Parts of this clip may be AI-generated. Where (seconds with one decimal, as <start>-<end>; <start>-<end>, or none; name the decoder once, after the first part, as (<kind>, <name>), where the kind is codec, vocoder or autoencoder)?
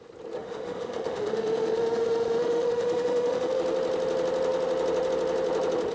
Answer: 0.4-3.6 (autoencoder, DAC-VAE)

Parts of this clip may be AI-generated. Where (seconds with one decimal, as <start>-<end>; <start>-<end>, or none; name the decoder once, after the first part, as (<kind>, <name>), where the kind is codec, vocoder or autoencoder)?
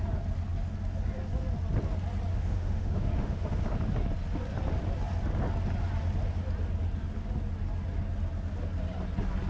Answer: 2.3-3.6 (autoencoder, DAC-VAE)